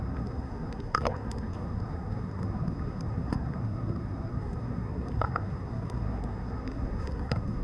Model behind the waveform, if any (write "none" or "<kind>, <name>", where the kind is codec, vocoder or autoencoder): codec, SNAC